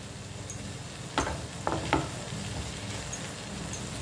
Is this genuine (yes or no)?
yes